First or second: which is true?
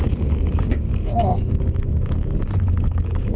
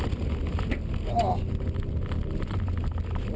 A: second